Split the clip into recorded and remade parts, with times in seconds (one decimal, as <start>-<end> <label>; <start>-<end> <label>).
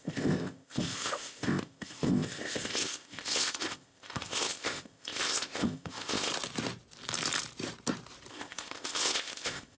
0.0-6.3 remade; 6.3-8.3 recorded; 8.3-9.8 remade